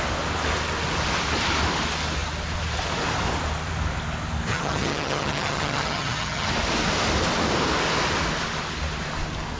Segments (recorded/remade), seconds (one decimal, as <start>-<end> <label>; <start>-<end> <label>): 0.0-4.5 recorded; 4.5-6.5 remade; 6.5-9.6 recorded